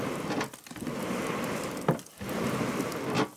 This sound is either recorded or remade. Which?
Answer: recorded